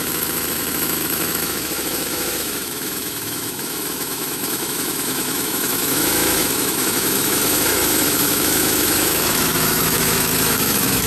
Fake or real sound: fake